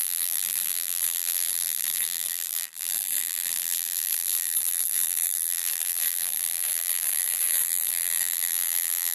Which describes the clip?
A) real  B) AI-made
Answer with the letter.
B